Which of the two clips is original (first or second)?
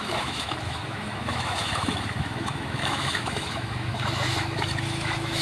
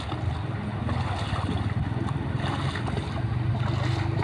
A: second